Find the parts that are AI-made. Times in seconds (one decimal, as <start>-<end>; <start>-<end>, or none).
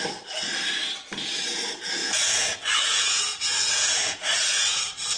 2.0-5.2